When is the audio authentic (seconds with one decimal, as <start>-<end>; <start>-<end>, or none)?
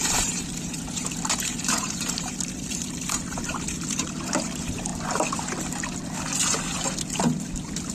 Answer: 4.9-7.9